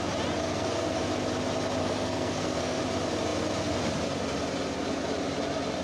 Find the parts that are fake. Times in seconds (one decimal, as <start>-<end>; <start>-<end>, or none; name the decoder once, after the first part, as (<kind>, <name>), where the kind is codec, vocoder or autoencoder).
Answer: 0.4-1.0 (codec, SNAC); 1.8-2.8

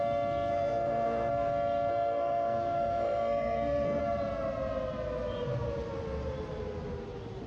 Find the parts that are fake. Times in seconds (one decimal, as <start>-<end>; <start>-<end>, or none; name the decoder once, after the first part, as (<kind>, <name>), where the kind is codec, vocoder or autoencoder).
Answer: 0.5-1.3 (codec, SNAC); 1.9-4.0

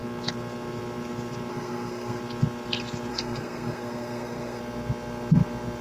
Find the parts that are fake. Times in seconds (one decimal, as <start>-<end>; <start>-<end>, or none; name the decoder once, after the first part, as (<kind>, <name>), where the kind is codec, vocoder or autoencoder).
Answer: 1.5-2.2 (codec, SNAC); 3.1-4.6

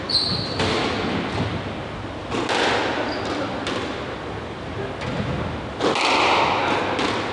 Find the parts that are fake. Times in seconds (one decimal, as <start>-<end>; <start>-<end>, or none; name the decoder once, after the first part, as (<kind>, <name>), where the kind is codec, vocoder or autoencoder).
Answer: none

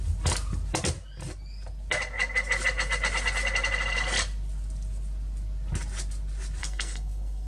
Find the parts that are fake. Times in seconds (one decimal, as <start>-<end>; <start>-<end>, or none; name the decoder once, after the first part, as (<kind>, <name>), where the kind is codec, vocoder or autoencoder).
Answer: 6.6-7.5 (codec, SNAC)